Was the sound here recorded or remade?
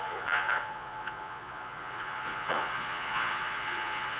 remade